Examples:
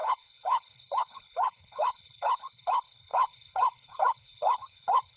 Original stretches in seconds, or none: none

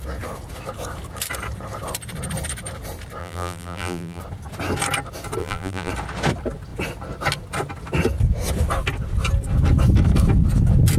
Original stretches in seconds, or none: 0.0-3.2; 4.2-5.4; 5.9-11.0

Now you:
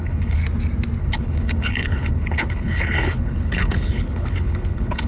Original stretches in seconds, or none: 0.4-1.0

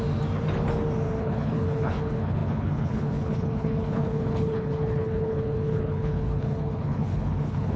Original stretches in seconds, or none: 0.0-1.2

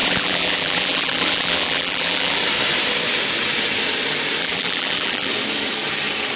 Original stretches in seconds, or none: 2.4-4.4; 5.3-6.4

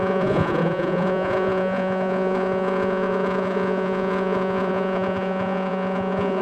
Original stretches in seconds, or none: none